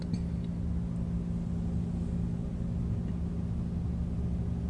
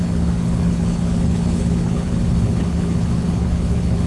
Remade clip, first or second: second